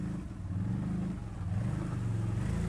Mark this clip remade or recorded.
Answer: recorded